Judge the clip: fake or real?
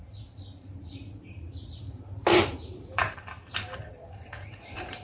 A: fake